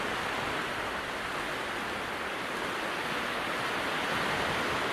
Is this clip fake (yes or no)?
no